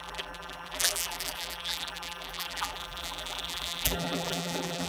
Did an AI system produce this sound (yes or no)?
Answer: yes